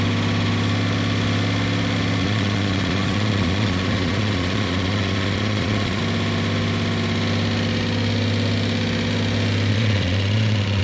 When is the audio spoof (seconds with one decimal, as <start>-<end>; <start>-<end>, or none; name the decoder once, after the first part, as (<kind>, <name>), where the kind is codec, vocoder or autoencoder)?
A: 2.2-6.0 (vocoder, Vocos); 9.7-10.8